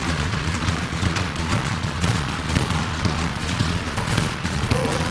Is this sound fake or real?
fake